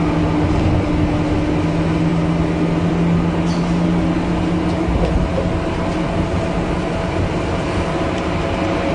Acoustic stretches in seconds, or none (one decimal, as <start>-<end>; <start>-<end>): 0.0-8.9